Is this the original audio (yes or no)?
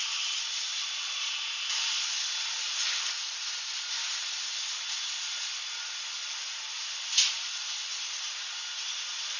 yes